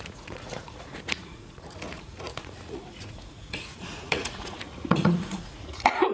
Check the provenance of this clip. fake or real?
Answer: fake